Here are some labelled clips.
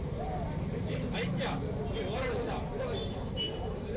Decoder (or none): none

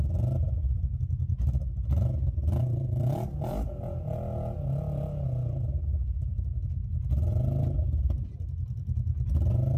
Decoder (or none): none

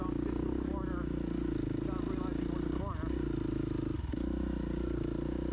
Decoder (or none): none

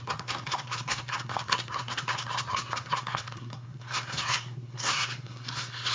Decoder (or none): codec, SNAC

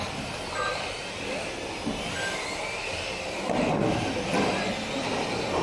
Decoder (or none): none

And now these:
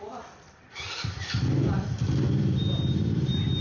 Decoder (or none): vocoder, BigVGAN v2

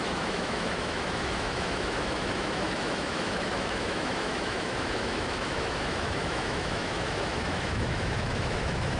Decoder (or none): autoencoder, DAC-VAE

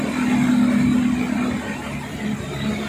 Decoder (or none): none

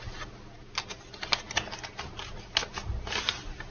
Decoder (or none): none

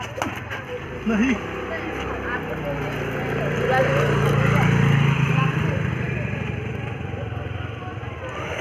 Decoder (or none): none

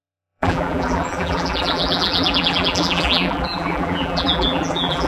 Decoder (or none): vocoder, BigVGAN v2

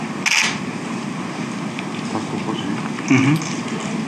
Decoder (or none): none